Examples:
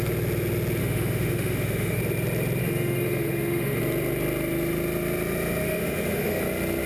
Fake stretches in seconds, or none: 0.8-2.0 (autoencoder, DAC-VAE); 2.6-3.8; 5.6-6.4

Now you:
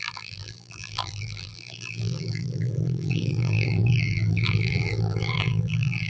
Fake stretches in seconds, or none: 0.0-6.1 (vocoder, BigVGAN v2)

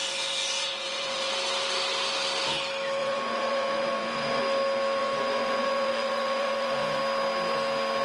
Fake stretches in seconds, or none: 0.0-1.3 (vocoder, Vocos); 3.0-4.4; 5.0-7.0

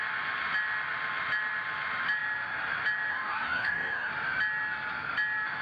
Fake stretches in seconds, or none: 3.1-4.1 (codec, DAC)

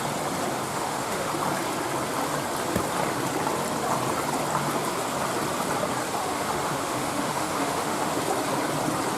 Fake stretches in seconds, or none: 0.7-1.3 (autoencoder, DAC-VAE); 6.2-8.2